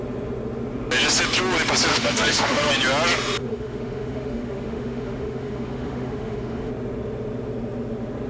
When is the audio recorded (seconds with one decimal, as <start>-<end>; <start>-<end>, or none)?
0.0-1.9; 2.7-3.4; 6.7-8.3